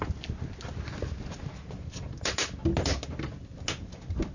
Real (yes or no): yes